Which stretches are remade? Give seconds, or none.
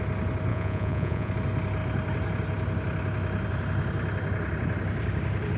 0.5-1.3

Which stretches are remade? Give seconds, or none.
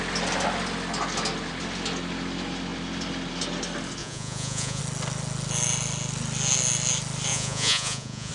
4.0-4.8; 7.3-8.3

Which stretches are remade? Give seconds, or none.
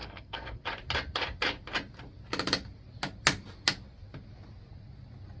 0.0-0.6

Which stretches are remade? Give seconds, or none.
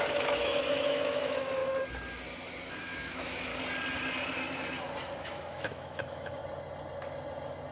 0.0-1.6; 2.7-3.5; 5.2-6.4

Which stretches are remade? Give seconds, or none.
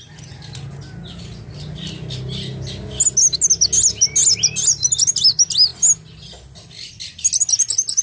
none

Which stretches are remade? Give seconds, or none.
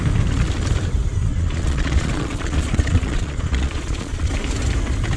1.3-4.3